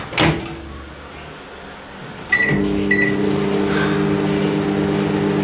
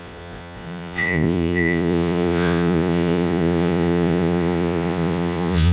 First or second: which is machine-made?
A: second